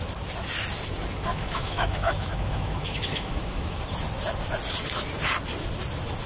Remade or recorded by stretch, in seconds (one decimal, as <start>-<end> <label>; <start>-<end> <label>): 0.0-1.3 recorded; 1.3-3.8 remade; 3.8-6.3 recorded